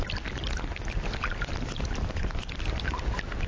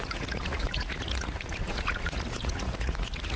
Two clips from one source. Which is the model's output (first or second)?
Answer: second